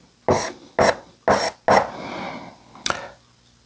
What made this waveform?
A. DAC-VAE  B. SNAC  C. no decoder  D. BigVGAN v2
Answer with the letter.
C